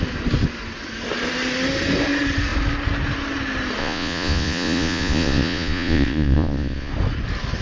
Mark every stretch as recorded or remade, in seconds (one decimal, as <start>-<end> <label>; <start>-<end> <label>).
0.0-3.8 recorded; 3.8-6.9 remade; 6.9-7.6 recorded